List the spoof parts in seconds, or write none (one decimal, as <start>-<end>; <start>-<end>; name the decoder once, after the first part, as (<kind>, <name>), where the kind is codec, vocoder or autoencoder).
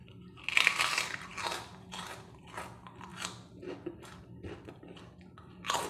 none